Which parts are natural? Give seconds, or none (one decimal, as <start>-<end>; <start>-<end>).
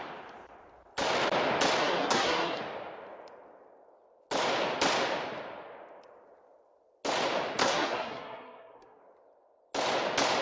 0.0-1.8; 2.6-7.6; 9.0-10.4